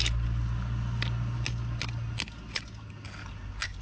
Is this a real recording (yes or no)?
yes